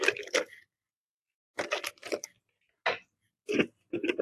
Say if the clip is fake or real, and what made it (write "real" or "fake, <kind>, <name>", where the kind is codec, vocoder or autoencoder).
real